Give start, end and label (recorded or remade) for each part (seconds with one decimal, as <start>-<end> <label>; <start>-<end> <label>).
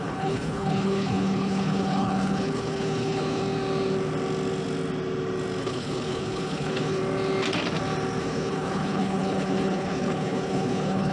0.0-3.4 remade; 3.4-5.6 recorded; 5.6-7.0 remade; 7.0-8.2 recorded; 8.2-11.1 remade